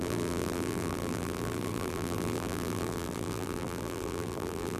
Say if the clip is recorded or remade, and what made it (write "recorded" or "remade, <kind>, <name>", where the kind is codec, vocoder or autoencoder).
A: remade, vocoder, BigVGAN v2